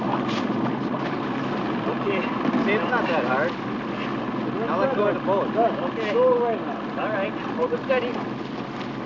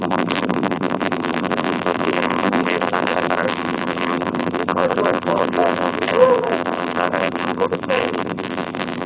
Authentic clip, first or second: first